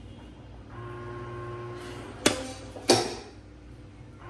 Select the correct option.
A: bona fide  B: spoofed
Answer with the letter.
A